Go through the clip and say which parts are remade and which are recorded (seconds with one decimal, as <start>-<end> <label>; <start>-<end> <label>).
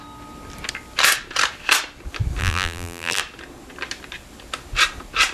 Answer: 0.0-2.4 recorded; 2.4-3.2 remade; 3.2-5.3 recorded